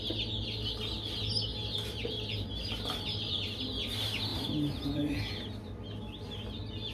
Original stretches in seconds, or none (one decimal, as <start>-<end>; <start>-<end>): 0.0-1.5; 3.6-4.3; 5.2-6.9